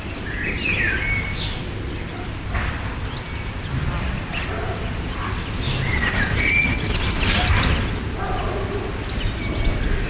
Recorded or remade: recorded